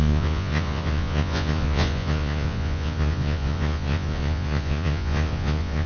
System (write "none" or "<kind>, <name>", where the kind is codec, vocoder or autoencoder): vocoder, Vocos